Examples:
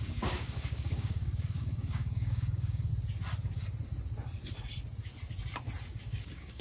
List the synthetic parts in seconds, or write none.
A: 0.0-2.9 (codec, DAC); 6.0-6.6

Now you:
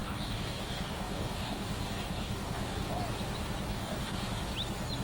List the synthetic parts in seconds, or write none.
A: 0.0-3.0 (codec, DAC); 3.7-4.5